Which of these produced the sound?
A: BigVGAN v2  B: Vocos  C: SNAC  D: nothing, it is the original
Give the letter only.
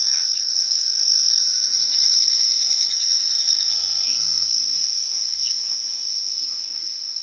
C